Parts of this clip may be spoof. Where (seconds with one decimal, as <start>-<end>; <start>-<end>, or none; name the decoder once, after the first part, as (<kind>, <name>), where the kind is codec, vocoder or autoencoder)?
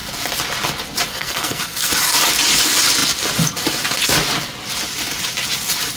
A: 1.1-1.9 (codec, SNAC)